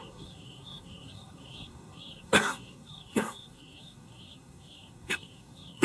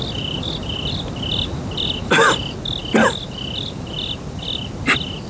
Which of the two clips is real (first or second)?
second